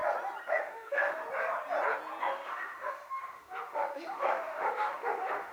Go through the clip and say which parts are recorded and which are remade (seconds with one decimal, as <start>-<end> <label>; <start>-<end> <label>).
0.0-0.5 recorded; 0.5-1.2 remade; 1.2-2.2 recorded; 2.2-5.5 remade